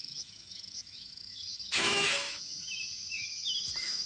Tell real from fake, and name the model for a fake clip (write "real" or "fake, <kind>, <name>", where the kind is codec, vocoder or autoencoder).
fake, autoencoder, DAC-VAE